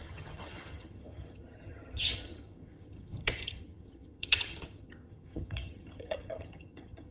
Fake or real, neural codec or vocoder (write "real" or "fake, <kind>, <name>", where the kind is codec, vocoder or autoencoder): fake, vocoder, HiFi-GAN